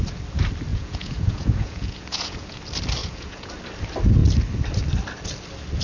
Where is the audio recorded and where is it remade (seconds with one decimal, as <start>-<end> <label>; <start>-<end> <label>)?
0.0-0.7 recorded; 0.7-2.6 remade; 2.6-3.0 recorded; 3.0-3.5 remade; 3.5-5.8 recorded

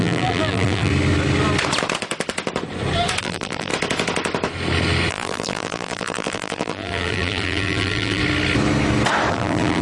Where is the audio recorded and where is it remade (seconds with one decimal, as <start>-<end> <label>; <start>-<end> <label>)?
0.0-0.9 remade; 0.9-3.2 recorded; 3.2-3.7 remade; 3.7-5.1 recorded; 5.1-8.2 remade; 8.2-9.3 recorded; 9.3-9.8 remade

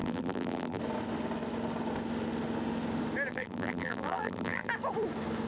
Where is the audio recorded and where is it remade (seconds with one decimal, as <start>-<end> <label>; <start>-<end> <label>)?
0.0-0.8 remade; 0.8-3.3 recorded; 3.3-4.7 remade; 4.7-5.5 recorded

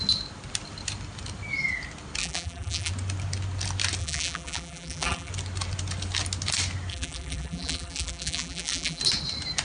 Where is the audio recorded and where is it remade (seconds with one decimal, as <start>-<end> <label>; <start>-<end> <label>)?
0.0-2.2 recorded; 2.2-2.9 remade; 2.9-4.0 recorded; 4.0-5.3 remade; 5.3-6.9 recorded; 6.9-9.0 remade; 9.0-9.6 recorded

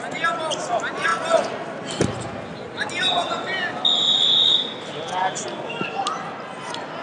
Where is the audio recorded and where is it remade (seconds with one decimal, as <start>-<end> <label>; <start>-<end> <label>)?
0.0-7.0 recorded

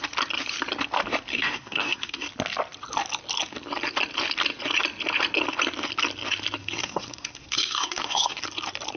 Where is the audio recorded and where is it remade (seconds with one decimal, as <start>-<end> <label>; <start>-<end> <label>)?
0.0-1.3 recorded; 1.3-2.3 remade; 2.3-6.6 recorded; 6.6-8.4 remade; 8.4-9.0 recorded